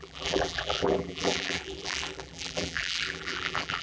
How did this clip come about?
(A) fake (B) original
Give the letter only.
A